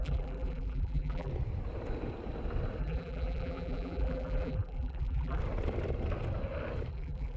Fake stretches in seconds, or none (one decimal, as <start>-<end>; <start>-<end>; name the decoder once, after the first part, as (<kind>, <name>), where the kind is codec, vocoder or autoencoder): 0.0-1.3 (vocoder, BigVGAN v2); 2.8-5.4; 6.9-7.4